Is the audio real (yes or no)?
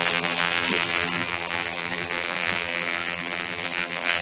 no